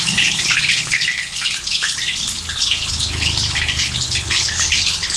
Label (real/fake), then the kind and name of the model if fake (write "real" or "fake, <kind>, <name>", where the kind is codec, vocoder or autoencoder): fake, codec, HILCodec